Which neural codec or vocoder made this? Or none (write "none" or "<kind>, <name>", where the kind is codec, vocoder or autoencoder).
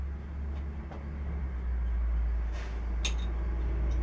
none